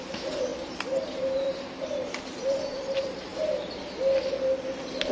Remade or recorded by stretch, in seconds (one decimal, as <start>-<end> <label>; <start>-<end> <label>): 0.0-3.3 remade; 3.3-5.1 recorded